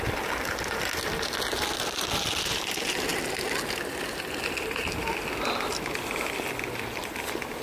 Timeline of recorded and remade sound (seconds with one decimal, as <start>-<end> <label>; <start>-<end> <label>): 0.0-7.6 recorded